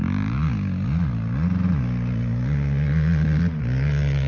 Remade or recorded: recorded